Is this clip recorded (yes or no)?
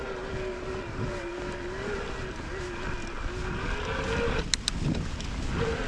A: yes